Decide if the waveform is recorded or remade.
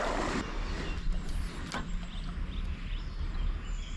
recorded